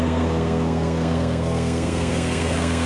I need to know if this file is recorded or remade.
remade